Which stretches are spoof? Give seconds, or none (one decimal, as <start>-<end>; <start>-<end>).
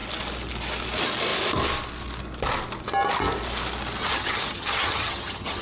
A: 4.0-5.6